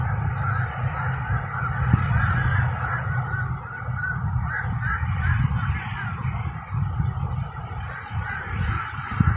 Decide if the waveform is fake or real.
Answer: real